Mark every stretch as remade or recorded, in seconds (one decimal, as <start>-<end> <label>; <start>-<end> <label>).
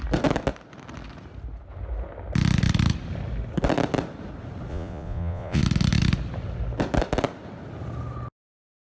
0.0-4.7 recorded; 4.7-5.6 remade; 5.6-8.8 recorded